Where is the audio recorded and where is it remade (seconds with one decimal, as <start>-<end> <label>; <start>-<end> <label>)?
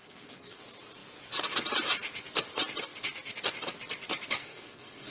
0.0-0.6 remade; 0.6-4.4 recorded; 4.4-5.1 remade